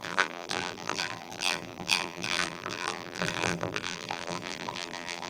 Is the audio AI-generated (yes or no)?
yes